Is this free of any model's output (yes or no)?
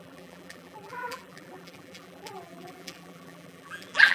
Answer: no